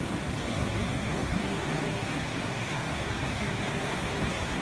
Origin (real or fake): fake